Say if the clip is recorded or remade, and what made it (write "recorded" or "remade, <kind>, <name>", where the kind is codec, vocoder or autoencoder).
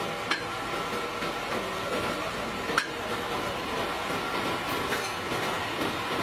recorded